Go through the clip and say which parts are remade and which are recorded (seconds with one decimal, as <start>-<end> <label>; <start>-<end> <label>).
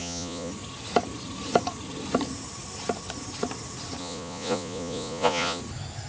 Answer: 0.0-0.5 remade; 0.5-4.0 recorded; 4.0-5.6 remade; 5.6-6.1 recorded